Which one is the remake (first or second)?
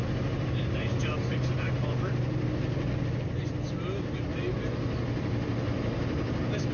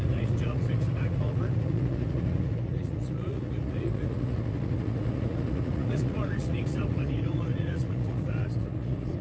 second